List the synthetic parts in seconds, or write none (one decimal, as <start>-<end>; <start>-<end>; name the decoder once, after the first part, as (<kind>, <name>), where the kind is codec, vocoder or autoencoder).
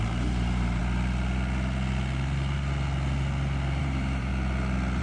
0.0-0.8 (vocoder, BigVGAN v2); 3.8-4.3